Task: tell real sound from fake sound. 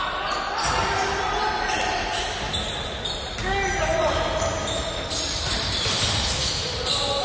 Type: real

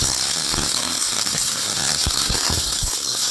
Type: fake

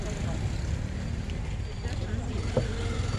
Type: real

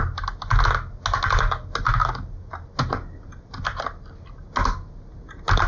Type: real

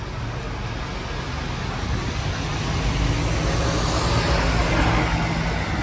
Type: real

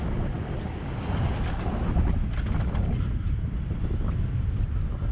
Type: real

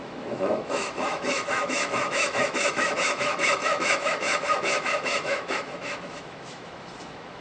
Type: fake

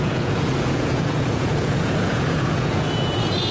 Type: fake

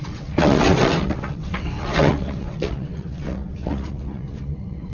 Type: fake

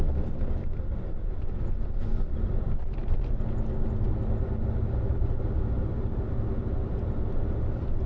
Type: real